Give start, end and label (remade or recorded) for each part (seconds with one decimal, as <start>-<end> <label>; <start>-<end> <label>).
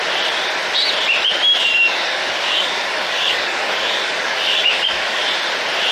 0.0-1.7 recorded; 1.7-5.2 remade; 5.2-5.9 recorded